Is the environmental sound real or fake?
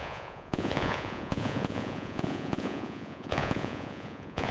fake